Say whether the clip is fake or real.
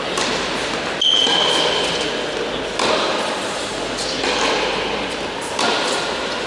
real